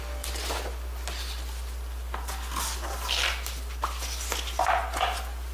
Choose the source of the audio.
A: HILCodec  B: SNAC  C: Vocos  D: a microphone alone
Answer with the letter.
D